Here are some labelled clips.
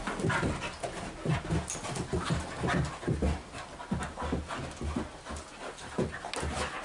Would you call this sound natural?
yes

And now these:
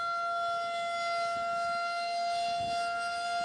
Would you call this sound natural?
yes